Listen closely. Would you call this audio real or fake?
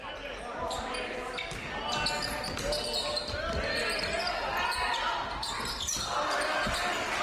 real